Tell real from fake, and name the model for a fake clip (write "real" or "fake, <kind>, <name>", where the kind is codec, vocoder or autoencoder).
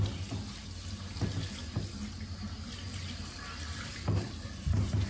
real